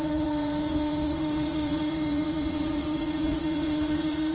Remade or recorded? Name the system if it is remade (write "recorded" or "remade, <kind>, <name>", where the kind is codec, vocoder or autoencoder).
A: remade, vocoder, Vocos